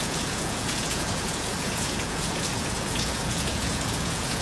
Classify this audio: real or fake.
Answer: fake